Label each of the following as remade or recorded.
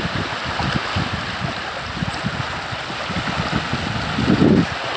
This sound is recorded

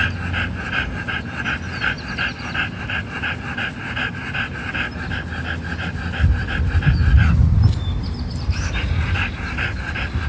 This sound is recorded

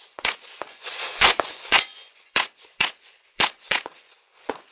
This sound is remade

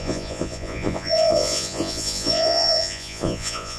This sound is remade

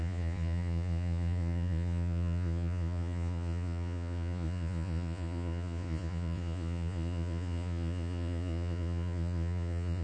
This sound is remade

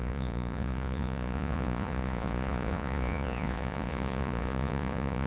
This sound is remade